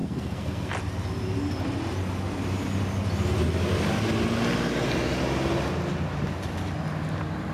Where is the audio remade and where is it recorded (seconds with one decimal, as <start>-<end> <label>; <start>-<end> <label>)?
0.0-0.7 remade; 0.7-7.5 recorded